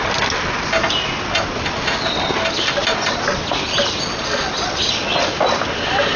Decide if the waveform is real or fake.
real